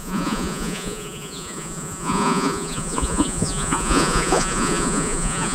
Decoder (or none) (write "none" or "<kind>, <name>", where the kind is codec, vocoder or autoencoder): vocoder, Vocos